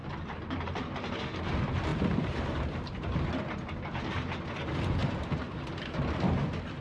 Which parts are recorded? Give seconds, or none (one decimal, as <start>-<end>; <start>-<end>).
0.9-1.9; 4.4-5.0; 6.2-6.8